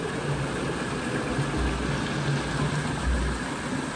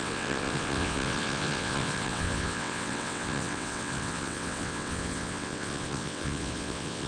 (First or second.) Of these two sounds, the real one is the first